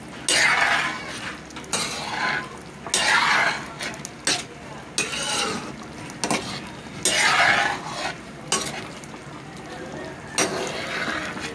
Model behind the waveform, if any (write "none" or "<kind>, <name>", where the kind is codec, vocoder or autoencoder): none